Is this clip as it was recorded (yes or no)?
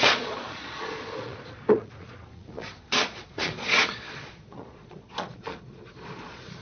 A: no